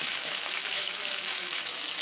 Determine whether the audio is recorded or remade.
remade